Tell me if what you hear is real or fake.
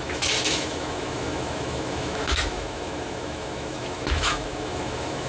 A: fake